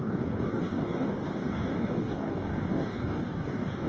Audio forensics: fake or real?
fake